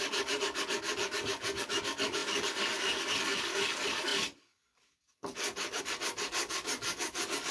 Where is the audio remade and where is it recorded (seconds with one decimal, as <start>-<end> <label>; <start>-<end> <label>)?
0.0-7.5 remade